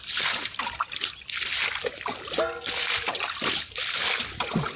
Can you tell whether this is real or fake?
real